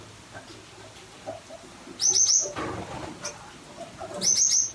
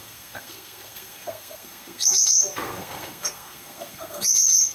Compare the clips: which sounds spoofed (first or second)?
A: second